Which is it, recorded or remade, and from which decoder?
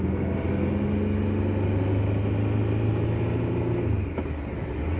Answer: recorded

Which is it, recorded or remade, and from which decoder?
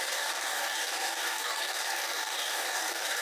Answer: remade, codec, DAC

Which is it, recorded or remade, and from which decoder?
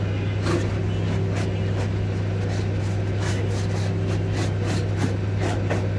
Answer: recorded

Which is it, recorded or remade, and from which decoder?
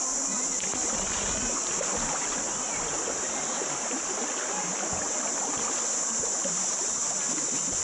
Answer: recorded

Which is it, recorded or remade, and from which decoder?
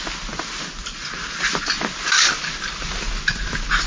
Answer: recorded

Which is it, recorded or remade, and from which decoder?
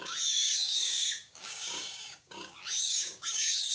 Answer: remade, codec, DAC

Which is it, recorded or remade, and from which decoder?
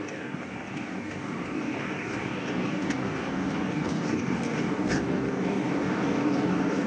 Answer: remade, codec, DAC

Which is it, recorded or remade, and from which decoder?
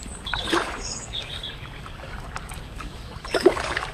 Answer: remade, codec, DAC